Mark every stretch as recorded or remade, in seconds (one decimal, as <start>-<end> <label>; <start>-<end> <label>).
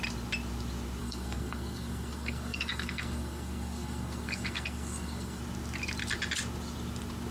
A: 0.0-1.0 recorded; 1.0-5.4 remade; 5.4-7.3 recorded